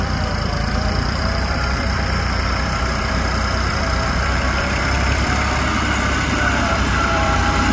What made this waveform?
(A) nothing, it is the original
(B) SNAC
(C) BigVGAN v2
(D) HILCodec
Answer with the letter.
C